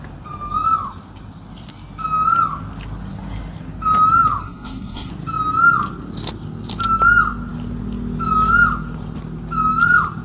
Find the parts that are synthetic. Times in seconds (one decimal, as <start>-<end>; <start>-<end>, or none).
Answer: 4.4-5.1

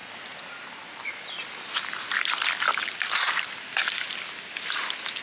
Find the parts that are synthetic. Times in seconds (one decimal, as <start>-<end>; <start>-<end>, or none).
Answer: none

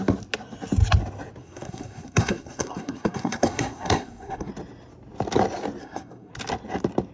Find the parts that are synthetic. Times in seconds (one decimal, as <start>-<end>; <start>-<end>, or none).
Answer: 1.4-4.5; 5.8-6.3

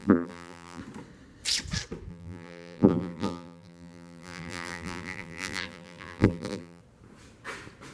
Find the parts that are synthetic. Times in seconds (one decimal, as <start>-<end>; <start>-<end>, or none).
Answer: 0.0-0.8; 2.1-6.8

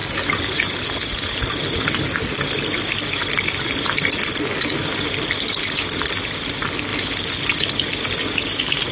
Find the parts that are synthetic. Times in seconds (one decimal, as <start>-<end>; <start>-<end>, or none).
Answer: none

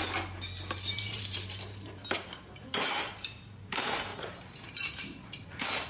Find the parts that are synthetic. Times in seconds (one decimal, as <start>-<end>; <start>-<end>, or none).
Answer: 0.9-5.9